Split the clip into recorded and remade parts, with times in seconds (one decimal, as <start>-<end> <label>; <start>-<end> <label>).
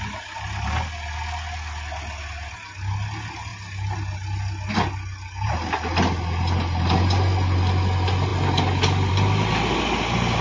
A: 0.0-10.4 recorded